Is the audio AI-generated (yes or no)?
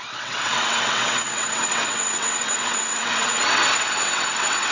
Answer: yes